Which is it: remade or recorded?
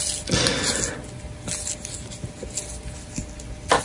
recorded